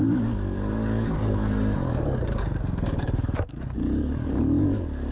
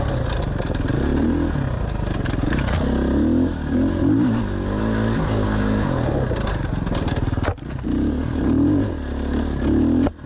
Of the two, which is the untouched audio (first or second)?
second